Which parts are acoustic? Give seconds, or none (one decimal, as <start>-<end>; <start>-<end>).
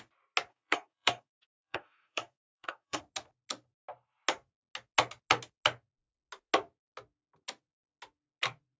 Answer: 0.0-0.5; 3.0-8.8